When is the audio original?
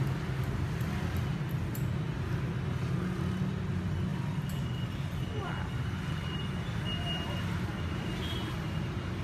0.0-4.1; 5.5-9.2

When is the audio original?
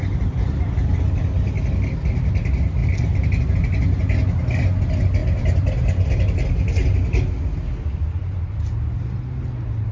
0.0-5.2; 7.0-9.9